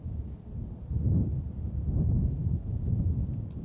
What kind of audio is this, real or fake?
real